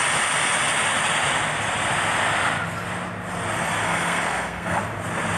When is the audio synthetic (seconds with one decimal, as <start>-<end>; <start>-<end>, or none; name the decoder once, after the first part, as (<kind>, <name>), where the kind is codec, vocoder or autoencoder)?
3.8-4.8 (codec, SNAC)